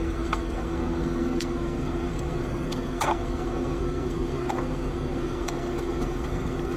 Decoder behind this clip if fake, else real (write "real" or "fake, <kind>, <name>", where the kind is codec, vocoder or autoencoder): fake, codec, SNAC